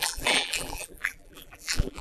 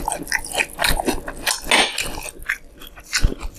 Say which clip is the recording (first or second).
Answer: second